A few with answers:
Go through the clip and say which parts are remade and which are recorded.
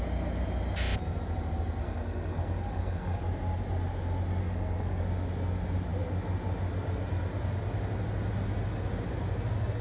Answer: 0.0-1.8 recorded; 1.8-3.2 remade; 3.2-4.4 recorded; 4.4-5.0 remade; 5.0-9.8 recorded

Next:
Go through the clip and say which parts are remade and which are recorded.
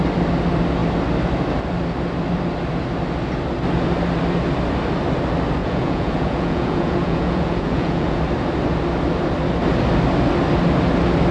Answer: 0.0-5.6 recorded; 5.6-8.2 remade; 8.2-11.3 recorded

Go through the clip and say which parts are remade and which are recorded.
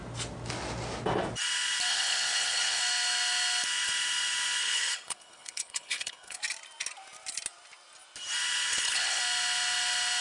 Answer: 0.0-1.9 recorded; 1.9-2.8 remade; 2.8-4.6 recorded; 4.6-6.4 remade; 6.4-8.7 recorded; 8.7-9.2 remade; 9.2-10.2 recorded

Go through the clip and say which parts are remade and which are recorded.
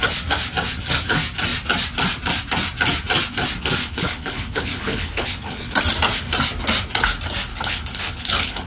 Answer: 0.0-3.8 recorded; 3.8-5.8 remade; 5.8-7.5 recorded; 7.5-8.7 remade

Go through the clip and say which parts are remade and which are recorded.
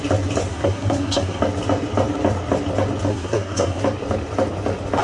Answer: 0.0-0.5 recorded; 0.5-1.4 remade; 1.4-3.1 recorded; 3.1-3.8 remade; 3.8-5.0 recorded